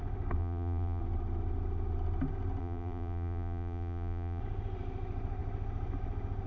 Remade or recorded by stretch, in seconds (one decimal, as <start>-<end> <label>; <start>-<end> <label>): 0.0-0.4 recorded; 0.4-1.0 remade; 1.0-2.6 recorded; 2.6-4.4 remade; 4.4-6.5 recorded